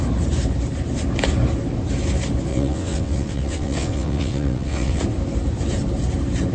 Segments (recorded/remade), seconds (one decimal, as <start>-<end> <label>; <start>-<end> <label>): 0.0-2.5 recorded; 2.5-5.0 remade; 5.0-6.5 recorded